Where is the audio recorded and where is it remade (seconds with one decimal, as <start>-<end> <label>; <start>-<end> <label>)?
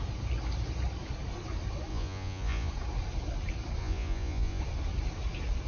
0.0-1.9 recorded; 1.9-2.7 remade; 2.7-3.8 recorded; 3.8-4.6 remade; 4.6-5.7 recorded